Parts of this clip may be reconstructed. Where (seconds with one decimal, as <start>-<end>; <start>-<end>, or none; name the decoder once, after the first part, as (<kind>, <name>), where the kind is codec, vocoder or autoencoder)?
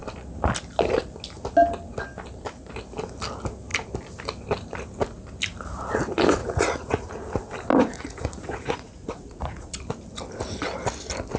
6.4-7.1 (vocoder, Vocos); 7.7-9.7